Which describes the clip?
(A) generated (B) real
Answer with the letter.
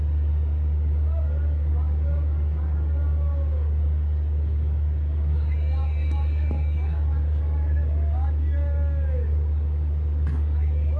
A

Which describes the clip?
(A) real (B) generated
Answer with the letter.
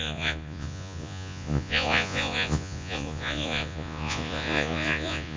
B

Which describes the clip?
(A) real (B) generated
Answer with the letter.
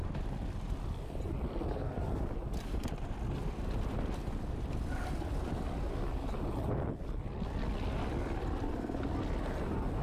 A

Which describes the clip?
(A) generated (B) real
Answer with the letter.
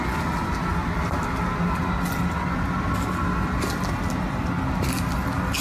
B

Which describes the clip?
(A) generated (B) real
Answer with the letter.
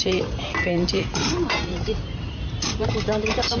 A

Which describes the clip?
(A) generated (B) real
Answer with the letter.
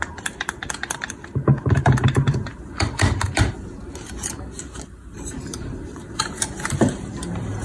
A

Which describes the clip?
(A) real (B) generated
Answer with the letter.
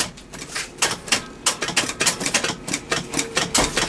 A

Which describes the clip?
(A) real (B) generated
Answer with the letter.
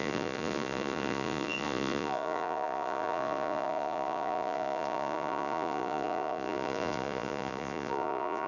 B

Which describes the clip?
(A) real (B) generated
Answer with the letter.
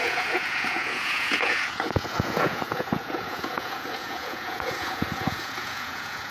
B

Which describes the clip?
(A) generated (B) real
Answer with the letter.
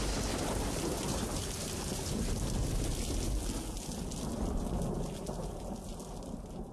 B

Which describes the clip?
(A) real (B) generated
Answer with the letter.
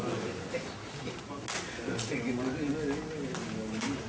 A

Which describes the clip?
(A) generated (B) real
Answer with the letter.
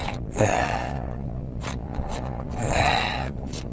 A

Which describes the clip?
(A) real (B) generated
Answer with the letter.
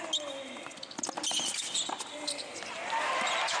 A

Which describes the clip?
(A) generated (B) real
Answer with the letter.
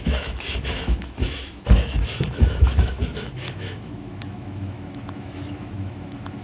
A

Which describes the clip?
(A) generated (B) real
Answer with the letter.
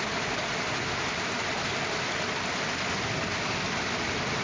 B